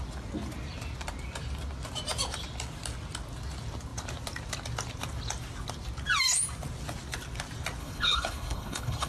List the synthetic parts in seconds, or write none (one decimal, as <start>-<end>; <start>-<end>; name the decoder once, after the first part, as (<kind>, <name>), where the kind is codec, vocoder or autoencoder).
7.8-9.1 (codec, HILCodec)